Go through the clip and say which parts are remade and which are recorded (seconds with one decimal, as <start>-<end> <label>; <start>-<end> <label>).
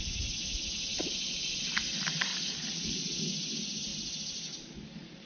0.0-0.9 recorded; 0.9-1.7 remade; 1.7-2.3 recorded; 2.3-3.2 remade; 3.2-5.3 recorded